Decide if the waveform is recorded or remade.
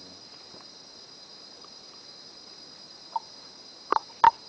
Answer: recorded